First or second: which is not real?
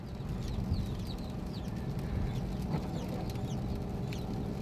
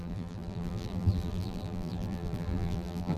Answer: second